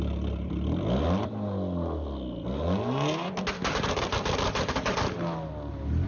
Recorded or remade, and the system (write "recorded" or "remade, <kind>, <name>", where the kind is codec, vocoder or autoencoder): recorded